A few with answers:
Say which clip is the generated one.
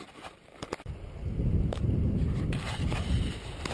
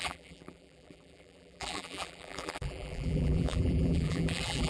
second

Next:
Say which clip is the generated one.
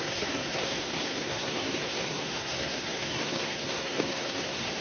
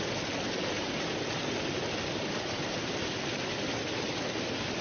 first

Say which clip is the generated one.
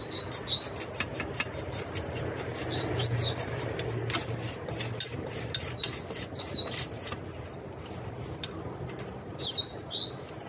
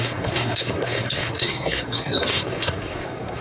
second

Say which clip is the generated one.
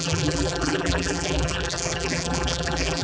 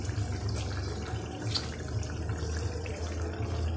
first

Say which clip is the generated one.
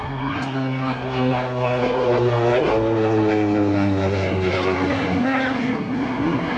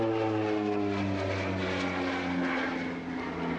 first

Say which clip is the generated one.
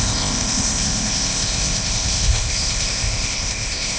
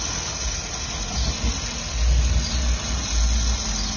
first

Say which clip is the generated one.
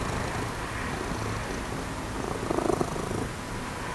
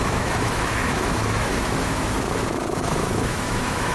second